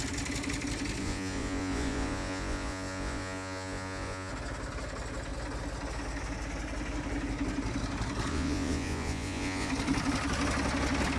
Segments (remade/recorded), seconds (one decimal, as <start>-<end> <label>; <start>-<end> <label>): 0.0-1.0 recorded; 1.0-4.3 remade; 4.3-8.3 recorded; 8.3-9.7 remade; 9.7-11.2 recorded